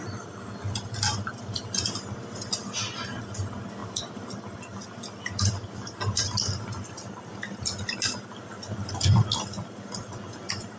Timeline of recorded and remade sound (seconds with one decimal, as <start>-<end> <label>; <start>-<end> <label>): 0.0-3.8 recorded; 3.8-5.0 remade; 5.0-10.8 recorded